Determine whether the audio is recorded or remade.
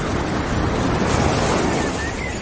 recorded